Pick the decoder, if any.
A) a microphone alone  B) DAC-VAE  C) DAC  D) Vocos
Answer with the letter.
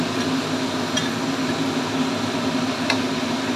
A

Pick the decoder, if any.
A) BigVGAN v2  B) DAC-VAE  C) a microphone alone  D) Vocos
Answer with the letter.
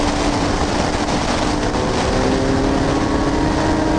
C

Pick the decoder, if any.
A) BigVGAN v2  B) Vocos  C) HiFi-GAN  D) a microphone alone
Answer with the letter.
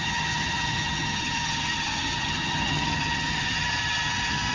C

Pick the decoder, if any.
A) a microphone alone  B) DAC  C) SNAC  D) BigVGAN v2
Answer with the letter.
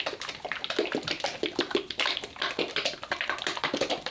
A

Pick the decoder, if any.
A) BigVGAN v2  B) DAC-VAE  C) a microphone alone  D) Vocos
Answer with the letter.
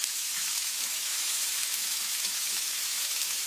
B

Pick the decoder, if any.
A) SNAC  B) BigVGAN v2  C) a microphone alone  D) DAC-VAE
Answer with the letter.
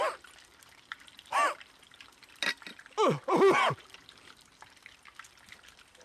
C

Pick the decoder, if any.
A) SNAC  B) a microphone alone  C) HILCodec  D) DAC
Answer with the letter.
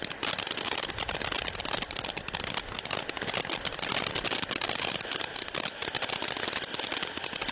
B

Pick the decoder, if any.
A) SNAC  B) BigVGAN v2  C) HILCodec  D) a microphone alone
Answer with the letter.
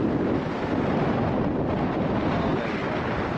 D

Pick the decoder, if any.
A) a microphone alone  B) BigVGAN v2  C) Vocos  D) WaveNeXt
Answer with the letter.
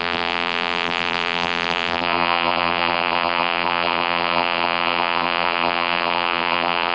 B